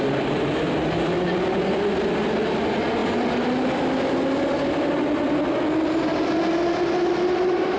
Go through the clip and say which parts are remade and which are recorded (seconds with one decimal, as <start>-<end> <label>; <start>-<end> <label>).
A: 0.0-7.8 recorded